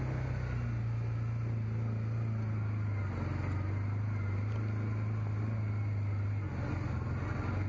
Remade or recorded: recorded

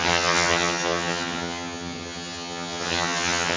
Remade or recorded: remade